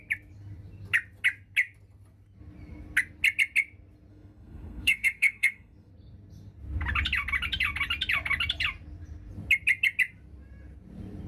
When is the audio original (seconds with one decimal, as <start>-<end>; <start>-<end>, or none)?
0.0-4.1; 5.9-11.3